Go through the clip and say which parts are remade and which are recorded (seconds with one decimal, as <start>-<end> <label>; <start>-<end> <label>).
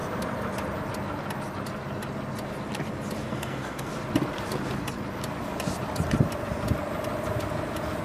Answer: 0.0-3.3 recorded; 3.3-3.9 remade; 3.9-8.0 recorded